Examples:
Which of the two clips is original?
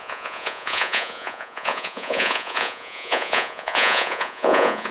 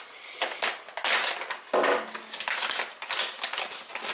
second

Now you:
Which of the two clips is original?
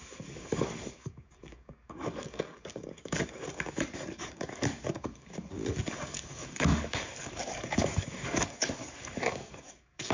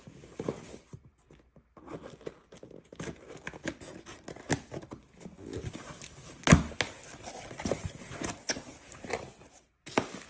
second